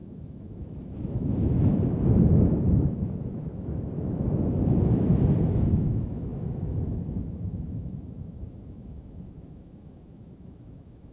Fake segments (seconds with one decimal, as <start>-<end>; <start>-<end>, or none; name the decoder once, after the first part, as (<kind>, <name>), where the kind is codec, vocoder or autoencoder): 0.0-11.1 (autoencoder, DAC-VAE)